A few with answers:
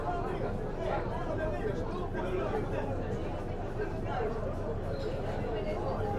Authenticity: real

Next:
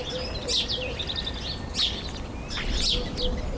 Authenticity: real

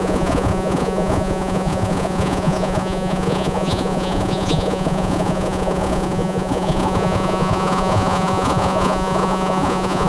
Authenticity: fake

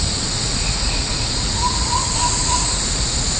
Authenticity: fake